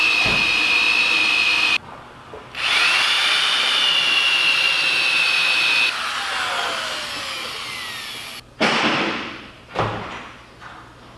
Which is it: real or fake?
real